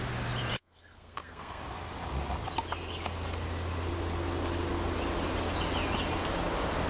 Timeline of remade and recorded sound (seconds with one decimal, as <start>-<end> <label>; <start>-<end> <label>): 0.0-0.5 recorded; 0.5-1.6 remade; 1.6-6.9 recorded